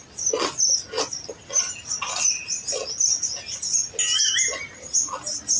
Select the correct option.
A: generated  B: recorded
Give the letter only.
B